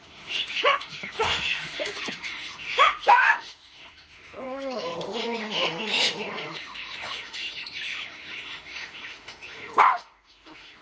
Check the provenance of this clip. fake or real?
fake